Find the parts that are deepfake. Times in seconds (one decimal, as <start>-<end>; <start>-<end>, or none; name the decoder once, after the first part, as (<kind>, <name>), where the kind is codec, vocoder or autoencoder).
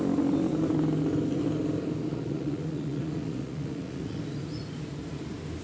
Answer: 2.1-4.2 (vocoder, Vocos)